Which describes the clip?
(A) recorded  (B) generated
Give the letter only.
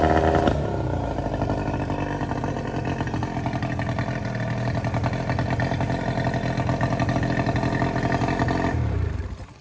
A